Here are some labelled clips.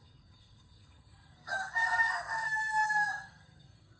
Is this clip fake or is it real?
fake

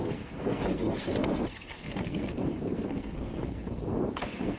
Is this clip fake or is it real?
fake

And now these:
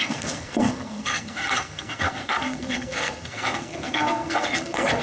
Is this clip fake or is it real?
fake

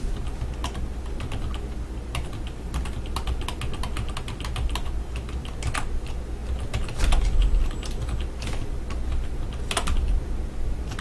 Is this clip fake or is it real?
real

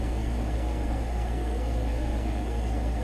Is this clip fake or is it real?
fake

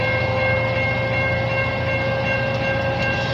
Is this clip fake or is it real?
real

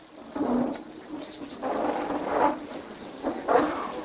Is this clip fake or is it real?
real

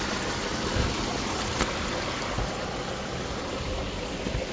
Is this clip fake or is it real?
real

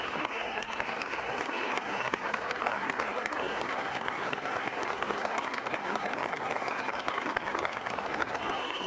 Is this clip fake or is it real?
fake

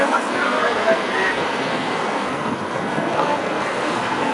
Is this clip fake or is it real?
fake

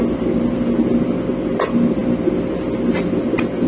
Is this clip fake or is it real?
real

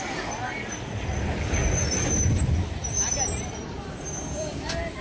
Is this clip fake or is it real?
real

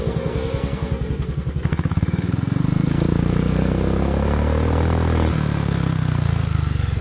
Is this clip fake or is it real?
fake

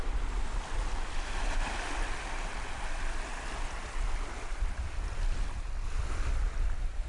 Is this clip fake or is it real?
real